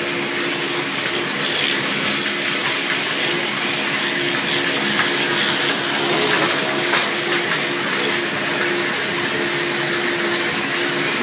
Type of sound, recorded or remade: recorded